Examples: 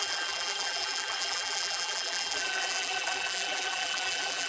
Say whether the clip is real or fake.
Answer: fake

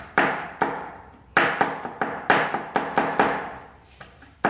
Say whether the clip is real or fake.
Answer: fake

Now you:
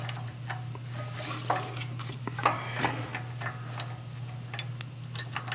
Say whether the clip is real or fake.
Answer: real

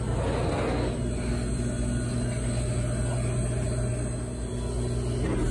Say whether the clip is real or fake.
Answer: real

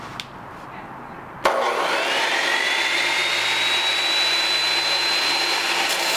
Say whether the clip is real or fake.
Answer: real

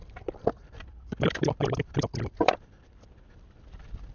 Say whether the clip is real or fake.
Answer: fake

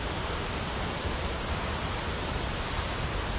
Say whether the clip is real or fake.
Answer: real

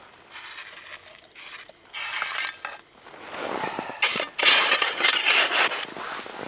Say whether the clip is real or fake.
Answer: real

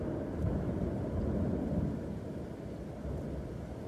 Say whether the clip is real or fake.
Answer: real